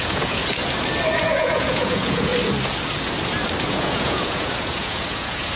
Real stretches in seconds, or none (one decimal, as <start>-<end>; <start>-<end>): 0.4-1.4; 2.3-3.7